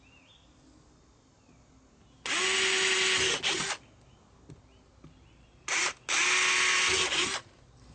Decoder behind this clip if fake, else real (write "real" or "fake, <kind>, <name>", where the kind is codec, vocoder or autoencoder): real